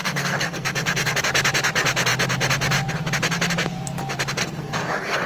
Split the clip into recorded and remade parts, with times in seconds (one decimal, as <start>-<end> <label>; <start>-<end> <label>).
0.0-1.2 remade; 1.2-4.4 recorded; 4.4-5.3 remade